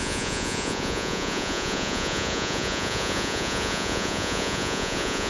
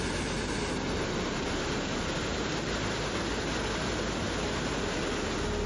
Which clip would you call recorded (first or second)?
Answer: second